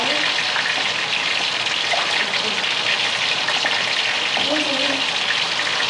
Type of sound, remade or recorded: recorded